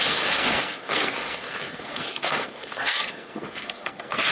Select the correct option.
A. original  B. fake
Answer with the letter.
B